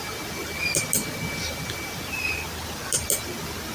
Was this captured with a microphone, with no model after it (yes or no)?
yes